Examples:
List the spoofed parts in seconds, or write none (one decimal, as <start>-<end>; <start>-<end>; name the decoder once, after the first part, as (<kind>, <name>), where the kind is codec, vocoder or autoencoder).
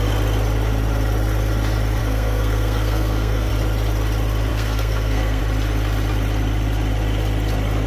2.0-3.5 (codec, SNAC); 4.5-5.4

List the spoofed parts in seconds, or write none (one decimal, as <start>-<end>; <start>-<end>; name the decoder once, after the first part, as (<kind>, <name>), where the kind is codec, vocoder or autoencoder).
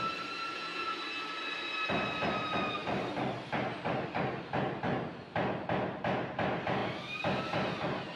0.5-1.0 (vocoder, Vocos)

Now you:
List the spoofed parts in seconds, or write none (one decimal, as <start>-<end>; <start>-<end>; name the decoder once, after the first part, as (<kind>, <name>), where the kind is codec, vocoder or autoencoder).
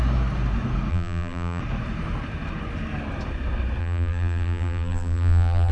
0.9-1.6 (vocoder, BigVGAN v2); 3.8-5.7